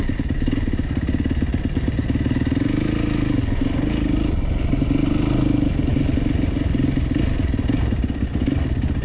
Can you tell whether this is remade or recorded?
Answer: recorded